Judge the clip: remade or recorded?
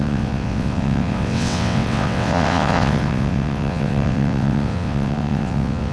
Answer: remade